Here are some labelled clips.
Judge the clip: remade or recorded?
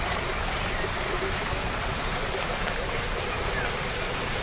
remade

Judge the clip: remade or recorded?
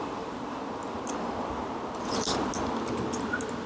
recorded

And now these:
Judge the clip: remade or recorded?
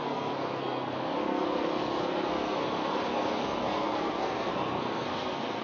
remade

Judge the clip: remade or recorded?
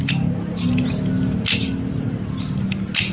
recorded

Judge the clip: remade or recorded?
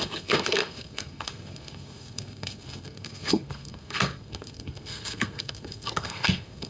remade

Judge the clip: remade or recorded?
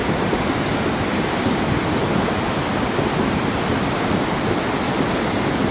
recorded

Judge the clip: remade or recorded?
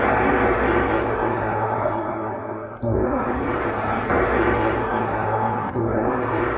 remade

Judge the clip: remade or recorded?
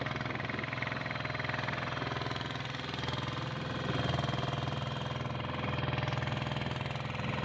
recorded